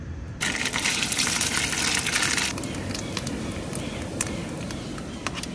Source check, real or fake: real